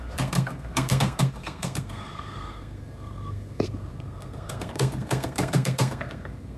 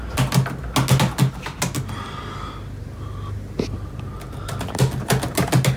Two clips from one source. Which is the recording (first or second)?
second